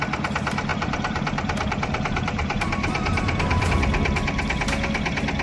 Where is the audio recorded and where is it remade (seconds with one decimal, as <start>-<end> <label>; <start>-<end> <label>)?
0.0-0.7 recorded; 0.7-3.7 remade; 3.7-5.4 recorded